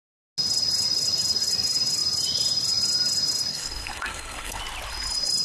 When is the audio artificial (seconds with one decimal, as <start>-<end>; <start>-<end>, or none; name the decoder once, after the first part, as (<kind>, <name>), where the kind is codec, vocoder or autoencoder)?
3.5-4.6 (codec, SNAC)